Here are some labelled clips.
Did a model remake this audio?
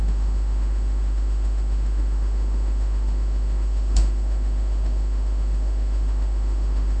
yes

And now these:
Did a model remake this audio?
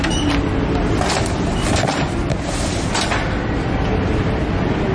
no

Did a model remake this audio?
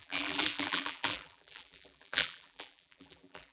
yes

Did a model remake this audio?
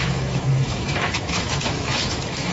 yes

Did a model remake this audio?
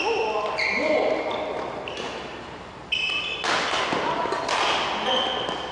no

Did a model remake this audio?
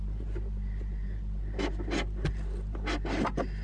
no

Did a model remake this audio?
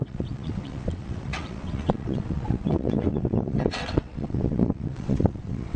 yes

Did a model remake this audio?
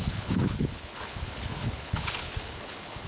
yes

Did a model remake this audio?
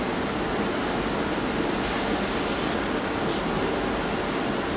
no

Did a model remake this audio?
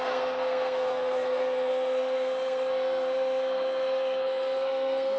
yes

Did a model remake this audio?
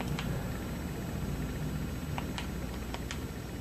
no